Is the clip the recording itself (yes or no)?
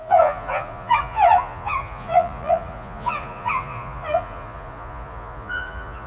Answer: no